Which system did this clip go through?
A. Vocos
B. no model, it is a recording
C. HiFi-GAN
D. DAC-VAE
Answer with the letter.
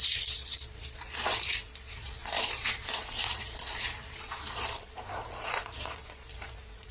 A